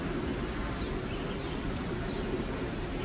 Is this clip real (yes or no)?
yes